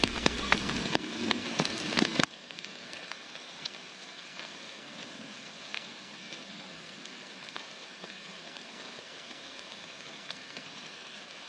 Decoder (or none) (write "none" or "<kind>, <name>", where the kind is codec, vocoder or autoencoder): codec, SNAC